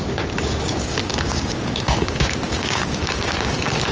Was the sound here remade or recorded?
remade